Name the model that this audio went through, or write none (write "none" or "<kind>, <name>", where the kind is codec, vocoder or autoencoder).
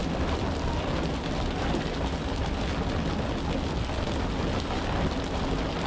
none